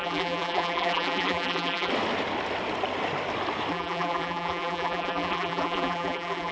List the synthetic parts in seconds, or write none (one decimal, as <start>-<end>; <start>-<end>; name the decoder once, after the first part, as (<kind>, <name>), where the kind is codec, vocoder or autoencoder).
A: 0.0-1.9 (vocoder, BigVGAN v2); 3.7-6.5